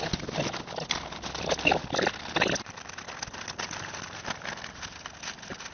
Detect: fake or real real